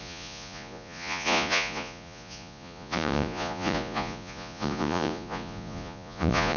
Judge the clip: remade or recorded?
remade